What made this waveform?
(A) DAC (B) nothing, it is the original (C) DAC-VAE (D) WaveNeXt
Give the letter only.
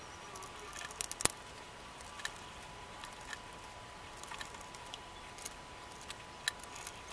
B